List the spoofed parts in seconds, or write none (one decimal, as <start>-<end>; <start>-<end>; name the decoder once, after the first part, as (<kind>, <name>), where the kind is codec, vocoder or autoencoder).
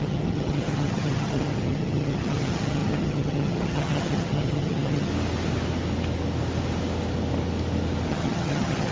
0.0-5.1 (vocoder, HiFi-GAN); 8.1-8.9